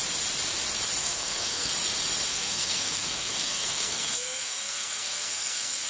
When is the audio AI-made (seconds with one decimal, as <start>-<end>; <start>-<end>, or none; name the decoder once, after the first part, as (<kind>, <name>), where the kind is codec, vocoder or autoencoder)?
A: 1.0-1.7 (codec, SNAC); 2.3-5.9